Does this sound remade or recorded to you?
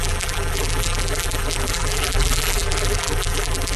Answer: remade